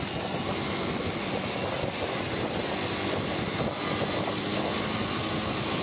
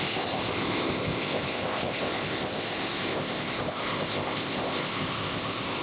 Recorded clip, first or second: first